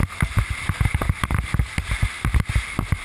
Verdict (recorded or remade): recorded